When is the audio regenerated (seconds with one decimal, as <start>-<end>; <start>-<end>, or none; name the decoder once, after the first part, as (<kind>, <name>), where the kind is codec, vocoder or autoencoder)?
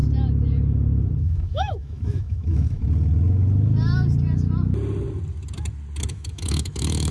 1.2-2.8 (autoencoder, DAC-VAE); 6.1-7.1